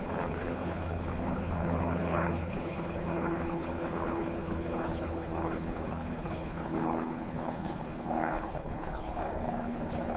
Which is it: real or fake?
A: fake